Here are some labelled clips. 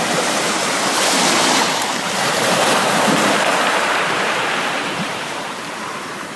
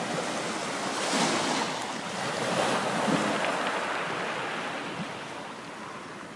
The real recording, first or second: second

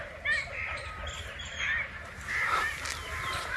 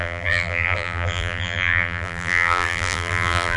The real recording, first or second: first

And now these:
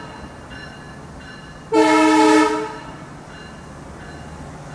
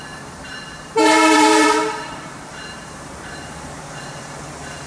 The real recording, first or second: first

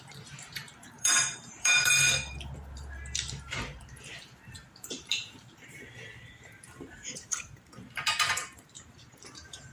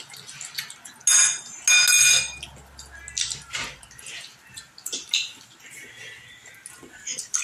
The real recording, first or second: second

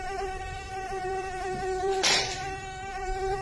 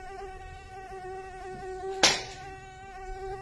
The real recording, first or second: second